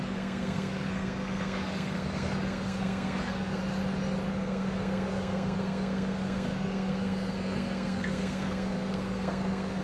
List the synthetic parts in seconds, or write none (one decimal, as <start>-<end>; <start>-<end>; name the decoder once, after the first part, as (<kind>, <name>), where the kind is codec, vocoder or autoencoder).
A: 0.0-3.6 (codec, SNAC); 4.3-9.8